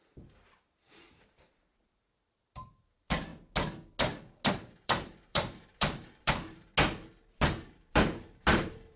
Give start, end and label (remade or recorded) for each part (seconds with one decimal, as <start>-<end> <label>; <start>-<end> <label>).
0.0-3.3 remade; 3.3-4.5 recorded; 4.5-6.7 remade; 6.7-7.9 recorded; 7.9-9.0 remade